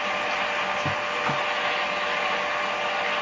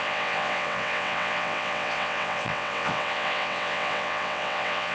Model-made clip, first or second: second